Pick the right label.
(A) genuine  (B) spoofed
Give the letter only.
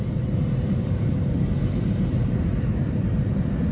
B